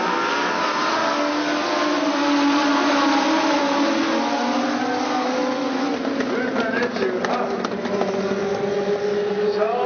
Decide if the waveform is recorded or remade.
recorded